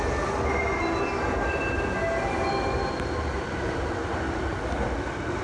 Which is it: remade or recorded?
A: recorded